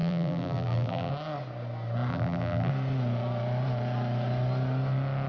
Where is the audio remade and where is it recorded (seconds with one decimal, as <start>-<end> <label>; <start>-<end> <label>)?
0.0-1.1 remade; 1.1-2.1 recorded; 2.1-2.7 remade; 2.7-5.3 recorded